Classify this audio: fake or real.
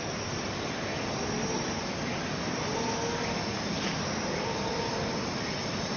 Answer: real